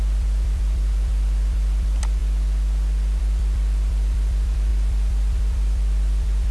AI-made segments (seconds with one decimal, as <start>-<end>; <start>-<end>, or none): 0.0-2.2; 3.2-6.5